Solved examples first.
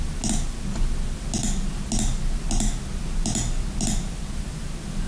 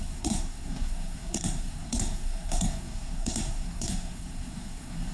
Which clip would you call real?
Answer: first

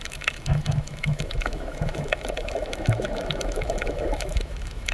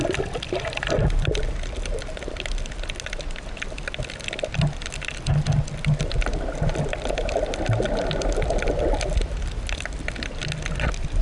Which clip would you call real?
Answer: second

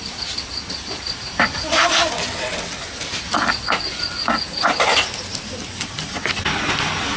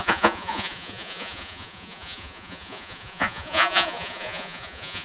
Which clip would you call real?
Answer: first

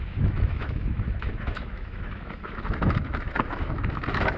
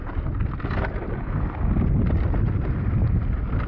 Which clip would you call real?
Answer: second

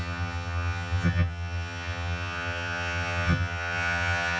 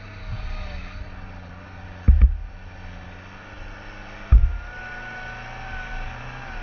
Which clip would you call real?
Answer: second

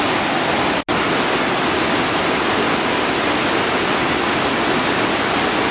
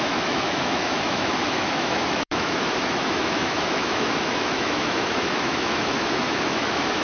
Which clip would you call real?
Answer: first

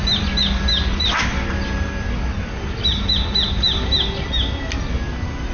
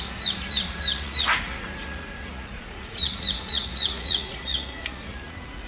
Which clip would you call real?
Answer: first